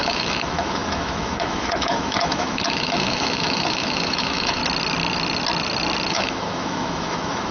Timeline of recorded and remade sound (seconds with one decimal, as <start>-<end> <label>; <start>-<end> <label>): 0.0-4.6 remade; 4.6-6.1 recorded; 6.1-7.5 remade